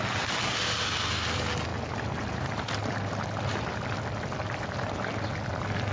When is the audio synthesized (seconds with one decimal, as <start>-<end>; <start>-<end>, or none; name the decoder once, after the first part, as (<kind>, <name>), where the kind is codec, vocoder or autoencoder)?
1.7-5.1 (vocoder, BigVGAN v2)